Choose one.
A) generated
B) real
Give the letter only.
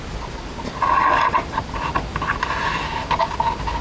B